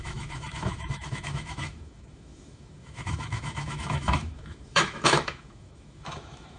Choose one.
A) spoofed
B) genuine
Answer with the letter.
A